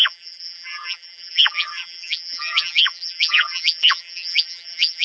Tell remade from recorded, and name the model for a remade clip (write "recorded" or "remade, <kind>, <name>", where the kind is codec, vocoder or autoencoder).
remade, vocoder, BigVGAN v2